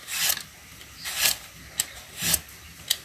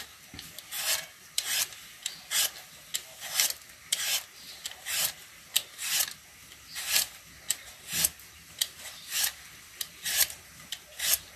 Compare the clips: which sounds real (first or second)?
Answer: second